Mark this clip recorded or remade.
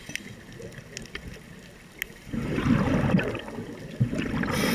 recorded